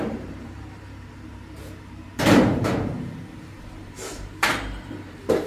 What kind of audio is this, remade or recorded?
remade